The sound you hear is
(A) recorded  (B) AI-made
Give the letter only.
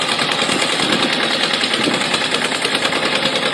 A